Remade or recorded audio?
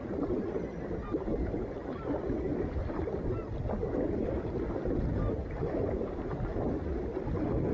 recorded